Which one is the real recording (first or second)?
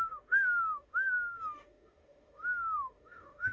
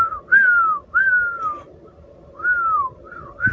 second